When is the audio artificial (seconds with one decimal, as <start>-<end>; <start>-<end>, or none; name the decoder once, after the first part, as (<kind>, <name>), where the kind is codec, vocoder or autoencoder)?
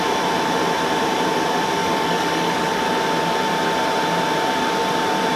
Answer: 1.8-2.8 (codec, DAC)